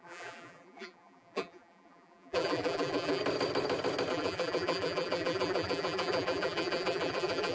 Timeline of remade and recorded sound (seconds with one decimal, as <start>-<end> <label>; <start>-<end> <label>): 0.0-3.2 remade; 3.2-4.1 recorded; 4.1-7.5 remade